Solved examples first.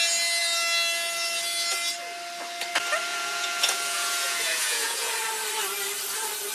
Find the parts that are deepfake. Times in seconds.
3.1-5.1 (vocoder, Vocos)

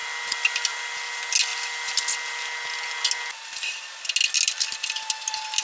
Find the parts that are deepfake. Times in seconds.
none

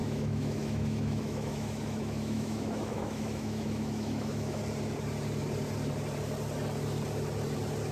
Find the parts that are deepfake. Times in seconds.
0.0-4.6 (autoencoder, DAC-VAE)

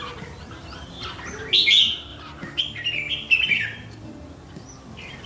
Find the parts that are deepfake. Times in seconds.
none